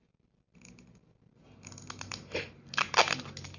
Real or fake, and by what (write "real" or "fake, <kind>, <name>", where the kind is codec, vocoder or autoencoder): real